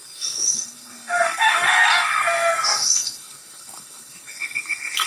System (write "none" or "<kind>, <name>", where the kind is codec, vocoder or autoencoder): codec, SNAC